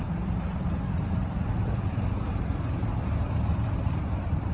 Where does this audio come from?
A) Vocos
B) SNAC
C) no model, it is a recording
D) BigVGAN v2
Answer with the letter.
D